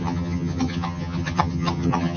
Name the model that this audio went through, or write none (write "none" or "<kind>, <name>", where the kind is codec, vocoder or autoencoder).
vocoder, HiFi-GAN